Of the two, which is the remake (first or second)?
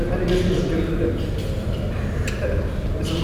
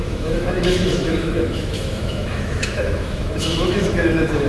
second